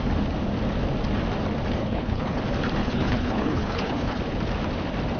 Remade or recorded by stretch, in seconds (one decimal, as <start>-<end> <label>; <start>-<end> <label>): 0.0-1.8 recorded; 1.8-2.4 remade; 2.4-2.8 recorded; 2.8-4.2 remade; 4.2-5.2 recorded